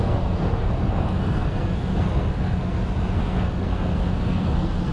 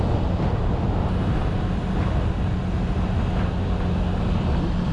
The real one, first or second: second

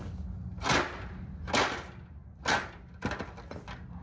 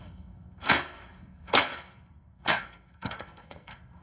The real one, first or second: first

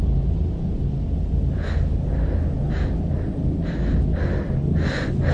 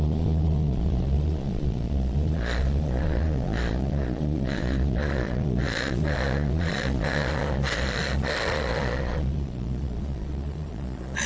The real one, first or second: first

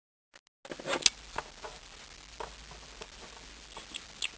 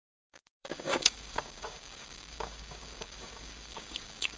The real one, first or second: first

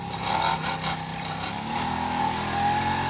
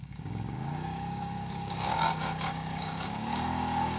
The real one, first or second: first